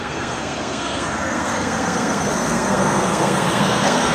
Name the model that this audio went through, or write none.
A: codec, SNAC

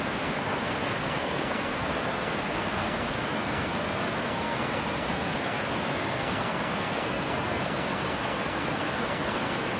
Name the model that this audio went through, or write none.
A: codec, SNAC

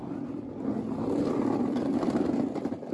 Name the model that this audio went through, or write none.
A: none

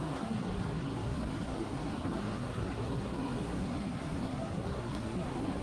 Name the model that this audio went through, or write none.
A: codec, SNAC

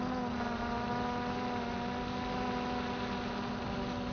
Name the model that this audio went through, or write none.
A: none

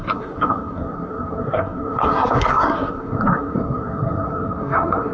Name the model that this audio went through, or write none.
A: codec, SNAC